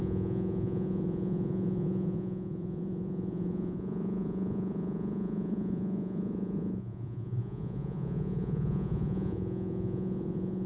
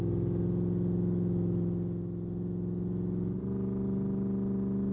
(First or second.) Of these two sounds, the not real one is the first